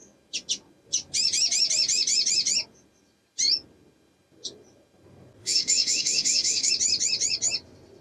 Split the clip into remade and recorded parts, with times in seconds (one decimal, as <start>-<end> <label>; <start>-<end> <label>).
0.0-5.4 recorded; 5.4-6.7 remade; 6.7-8.0 recorded